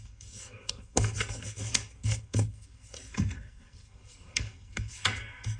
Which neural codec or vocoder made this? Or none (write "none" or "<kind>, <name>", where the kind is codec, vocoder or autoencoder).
codec, SNAC